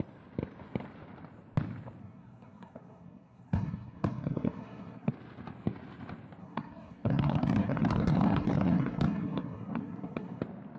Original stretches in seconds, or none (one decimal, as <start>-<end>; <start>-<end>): 0.0-2.0; 5.1-6.4; 10.4-10.8